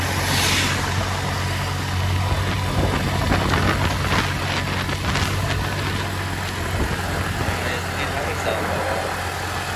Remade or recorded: recorded